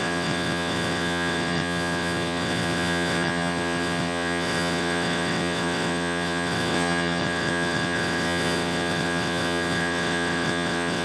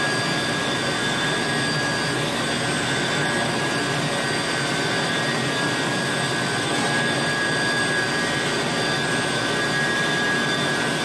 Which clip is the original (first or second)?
second